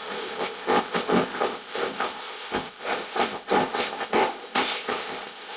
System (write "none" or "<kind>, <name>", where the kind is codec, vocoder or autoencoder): codec, ZipCodec